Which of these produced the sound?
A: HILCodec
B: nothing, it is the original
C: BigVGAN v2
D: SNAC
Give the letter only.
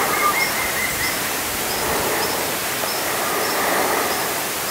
C